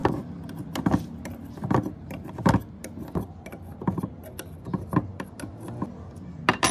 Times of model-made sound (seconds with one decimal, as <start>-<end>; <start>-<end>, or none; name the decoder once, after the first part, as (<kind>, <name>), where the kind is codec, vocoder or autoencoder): none